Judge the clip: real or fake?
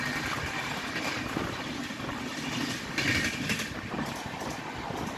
real